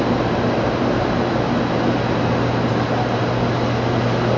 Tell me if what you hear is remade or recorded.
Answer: recorded